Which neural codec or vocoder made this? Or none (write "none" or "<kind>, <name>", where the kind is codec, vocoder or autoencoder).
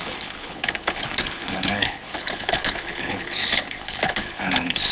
codec, HILCodec